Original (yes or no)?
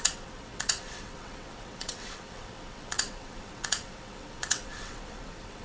no